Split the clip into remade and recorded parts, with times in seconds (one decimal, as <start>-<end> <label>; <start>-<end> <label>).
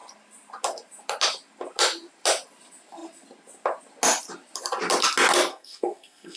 0.0-5.5 recorded; 5.5-6.4 remade